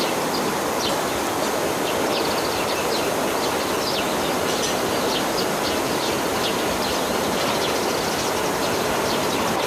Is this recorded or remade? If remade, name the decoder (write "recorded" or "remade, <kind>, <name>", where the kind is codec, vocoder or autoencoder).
recorded